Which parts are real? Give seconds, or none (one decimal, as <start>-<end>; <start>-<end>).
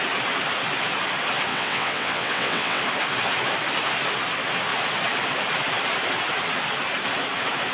0.0-1.5; 2.8-7.7